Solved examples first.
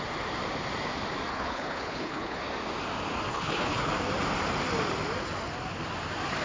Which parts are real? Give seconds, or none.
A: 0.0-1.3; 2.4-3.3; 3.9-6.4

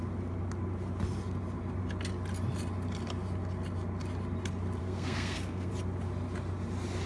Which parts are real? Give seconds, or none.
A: 0.0-4.8; 5.7-7.1

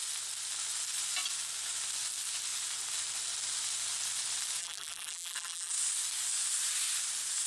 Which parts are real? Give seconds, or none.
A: 0.0-4.6; 5.7-7.5

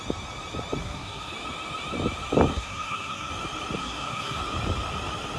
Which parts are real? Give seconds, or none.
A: 0.0-0.8; 1.3-2.5; 3.3-3.8; 4.4-5.4

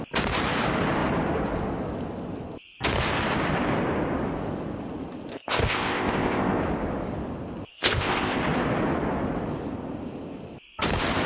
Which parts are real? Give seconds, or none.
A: 0.0-5.3; 6.6-7.7; 8.4-11.3